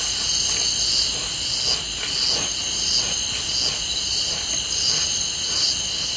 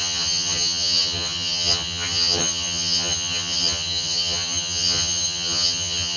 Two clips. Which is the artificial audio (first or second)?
second